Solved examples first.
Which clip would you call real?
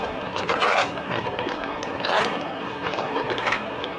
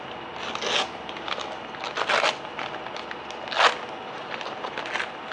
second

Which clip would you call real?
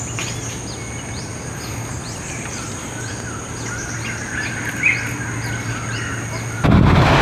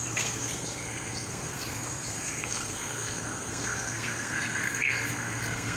first